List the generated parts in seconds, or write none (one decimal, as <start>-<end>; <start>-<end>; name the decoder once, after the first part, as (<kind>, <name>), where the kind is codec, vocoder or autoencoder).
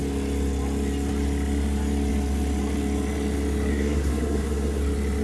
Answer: 3.7-4.8 (codec, SNAC)